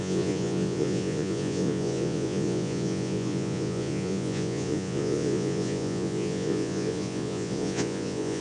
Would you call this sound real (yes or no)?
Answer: no